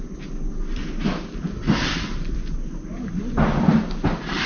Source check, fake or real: real